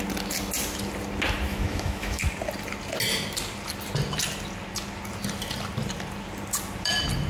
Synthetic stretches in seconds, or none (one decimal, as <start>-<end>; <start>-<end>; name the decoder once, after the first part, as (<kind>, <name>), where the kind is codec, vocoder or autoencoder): 1.5-2.2 (autoencoder, DAC-VAE)